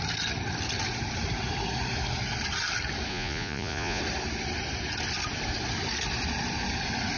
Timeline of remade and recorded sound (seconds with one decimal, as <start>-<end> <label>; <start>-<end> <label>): 0.0-3.1 recorded; 3.1-4.0 remade; 4.0-7.2 recorded